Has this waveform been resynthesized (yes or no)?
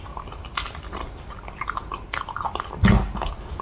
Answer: no